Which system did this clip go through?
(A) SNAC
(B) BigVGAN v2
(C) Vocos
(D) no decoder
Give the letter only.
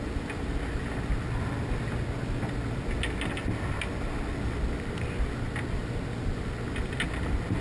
D